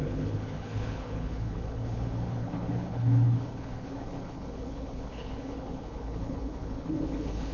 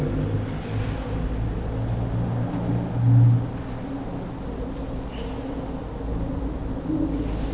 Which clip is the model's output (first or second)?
first